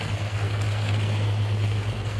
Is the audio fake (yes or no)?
yes